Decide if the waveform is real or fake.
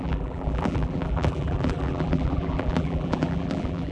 fake